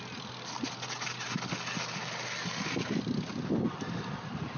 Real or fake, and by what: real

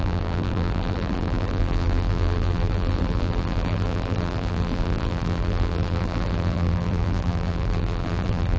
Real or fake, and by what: fake, vocoder, BigVGAN v2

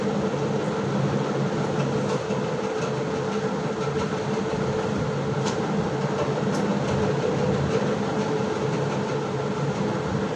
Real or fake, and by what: real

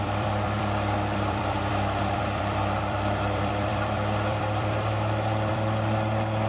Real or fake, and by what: fake, vocoder, BigVGAN v2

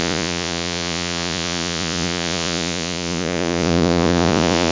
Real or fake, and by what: fake, vocoder, Vocos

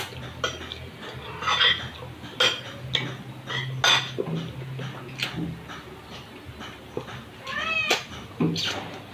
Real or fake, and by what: real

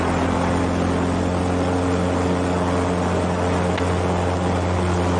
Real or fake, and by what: real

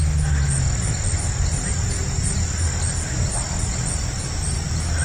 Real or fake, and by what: real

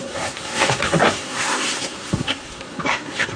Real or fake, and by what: fake, codec, SNAC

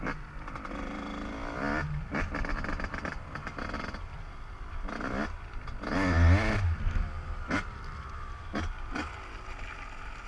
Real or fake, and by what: real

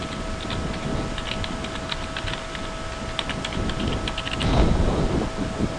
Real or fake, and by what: real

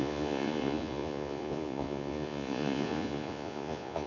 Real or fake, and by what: fake, vocoder, Vocos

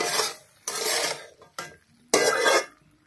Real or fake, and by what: real